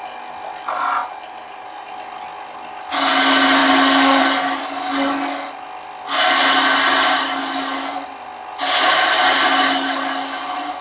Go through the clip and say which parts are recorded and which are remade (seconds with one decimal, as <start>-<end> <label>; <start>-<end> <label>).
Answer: 0.0-1.0 recorded; 1.0-1.9 remade; 1.9-10.8 recorded